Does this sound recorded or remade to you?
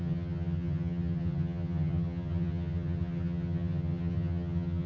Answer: remade